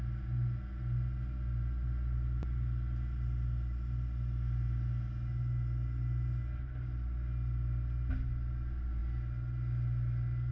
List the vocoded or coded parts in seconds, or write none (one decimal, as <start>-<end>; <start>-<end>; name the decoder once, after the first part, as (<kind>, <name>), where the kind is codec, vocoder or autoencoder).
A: none

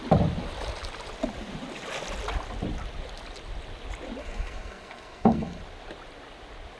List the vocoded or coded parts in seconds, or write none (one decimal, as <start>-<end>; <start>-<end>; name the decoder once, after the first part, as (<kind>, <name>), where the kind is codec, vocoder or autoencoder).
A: 4.2-5.6 (codec, SNAC)

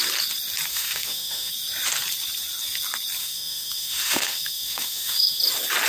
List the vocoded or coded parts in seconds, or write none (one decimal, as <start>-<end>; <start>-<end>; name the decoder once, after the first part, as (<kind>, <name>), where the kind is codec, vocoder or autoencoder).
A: 0.7-1.5 (autoencoder, DAC-VAE); 3.2-5.4

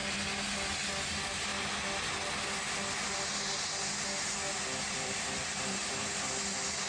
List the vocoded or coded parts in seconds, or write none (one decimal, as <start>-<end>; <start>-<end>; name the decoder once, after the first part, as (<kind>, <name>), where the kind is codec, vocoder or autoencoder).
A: 0.9-1.5 (vocoder, BigVGAN v2); 4.8-6.9

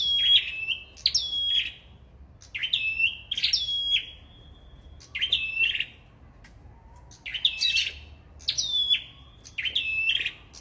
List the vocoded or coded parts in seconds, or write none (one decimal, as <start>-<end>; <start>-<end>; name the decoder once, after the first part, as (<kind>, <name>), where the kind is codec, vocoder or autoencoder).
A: none

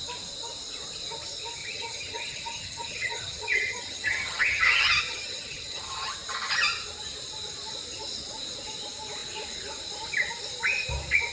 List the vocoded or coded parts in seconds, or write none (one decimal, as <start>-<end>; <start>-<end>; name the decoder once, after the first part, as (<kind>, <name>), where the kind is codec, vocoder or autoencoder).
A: 1.6-5.8 (vocoder, HiFi-GAN)